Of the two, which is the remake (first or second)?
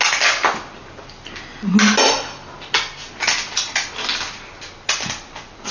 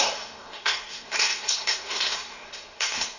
second